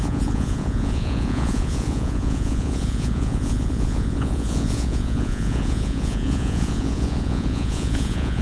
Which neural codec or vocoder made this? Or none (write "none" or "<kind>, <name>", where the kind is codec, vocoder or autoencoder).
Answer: vocoder, Vocos